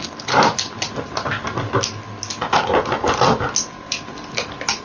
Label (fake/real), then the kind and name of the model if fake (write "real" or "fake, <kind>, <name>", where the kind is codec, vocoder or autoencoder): real